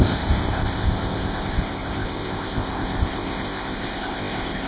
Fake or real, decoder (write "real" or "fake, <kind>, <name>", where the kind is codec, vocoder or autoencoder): fake, codec, ZipCodec